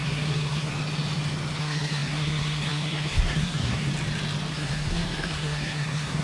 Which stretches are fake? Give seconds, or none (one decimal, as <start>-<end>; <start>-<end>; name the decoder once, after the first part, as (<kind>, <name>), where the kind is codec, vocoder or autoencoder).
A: 0.0-0.7 (codec, SNAC); 1.6-3.9; 4.5-6.2